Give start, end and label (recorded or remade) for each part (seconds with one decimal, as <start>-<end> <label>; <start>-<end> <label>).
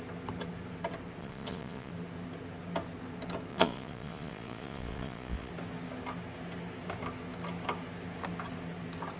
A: 0.0-1.2 recorded; 1.2-1.9 remade; 1.9-3.5 recorded; 3.5-5.5 remade; 5.5-9.2 recorded